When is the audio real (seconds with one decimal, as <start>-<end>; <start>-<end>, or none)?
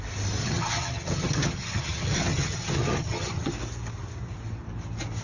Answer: 0.0-0.4; 3.5-5.2